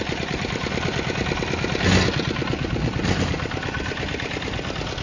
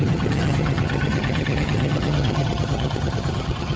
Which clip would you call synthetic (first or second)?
second